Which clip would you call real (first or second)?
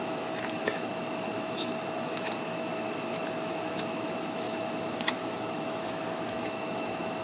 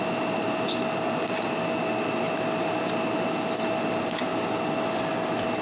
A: second